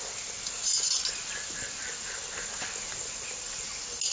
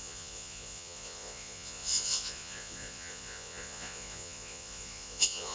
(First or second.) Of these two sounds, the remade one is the second